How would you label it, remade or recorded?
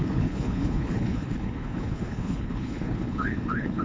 remade